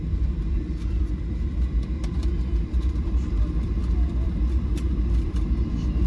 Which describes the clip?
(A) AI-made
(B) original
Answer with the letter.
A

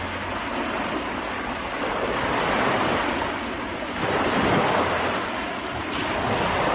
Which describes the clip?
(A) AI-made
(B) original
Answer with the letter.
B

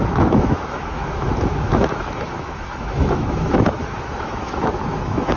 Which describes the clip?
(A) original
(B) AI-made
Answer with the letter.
B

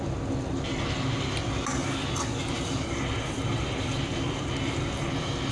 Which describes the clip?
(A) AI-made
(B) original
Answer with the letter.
B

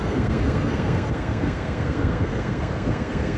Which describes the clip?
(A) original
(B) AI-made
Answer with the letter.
B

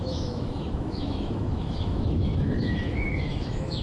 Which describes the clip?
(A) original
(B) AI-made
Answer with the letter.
B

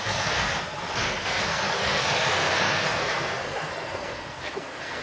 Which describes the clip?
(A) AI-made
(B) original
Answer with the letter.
A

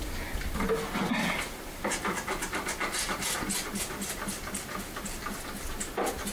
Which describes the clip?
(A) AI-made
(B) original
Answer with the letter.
B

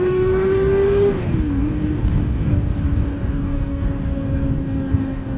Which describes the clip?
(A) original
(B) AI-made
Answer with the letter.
B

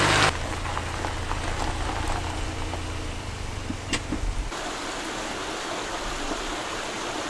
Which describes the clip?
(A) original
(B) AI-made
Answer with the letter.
A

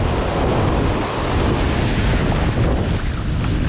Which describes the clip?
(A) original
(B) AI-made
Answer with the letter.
A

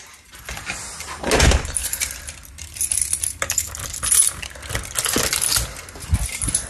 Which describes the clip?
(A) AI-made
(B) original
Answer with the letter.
B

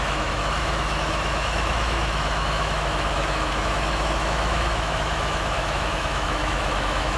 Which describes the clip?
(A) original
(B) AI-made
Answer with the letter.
B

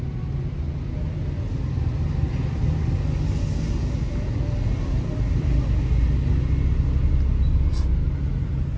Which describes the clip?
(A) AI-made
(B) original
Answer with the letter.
B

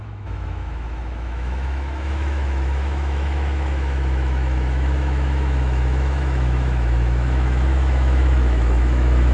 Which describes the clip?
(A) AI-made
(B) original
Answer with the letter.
A